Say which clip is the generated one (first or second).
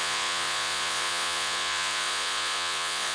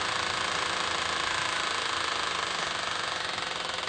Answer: first